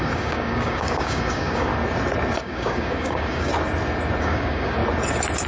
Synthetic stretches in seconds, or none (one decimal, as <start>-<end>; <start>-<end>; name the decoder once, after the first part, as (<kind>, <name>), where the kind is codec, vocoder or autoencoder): 0.0-1.7 (codec, DAC); 2.4-3.5; 4.2-4.8